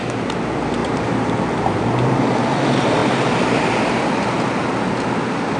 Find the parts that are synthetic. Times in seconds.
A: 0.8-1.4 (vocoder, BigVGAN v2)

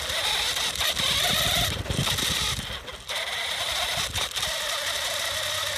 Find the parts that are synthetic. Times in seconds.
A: none

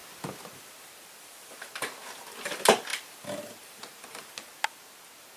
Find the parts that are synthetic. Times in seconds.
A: 2.9-4.3 (vocoder, BigVGAN v2)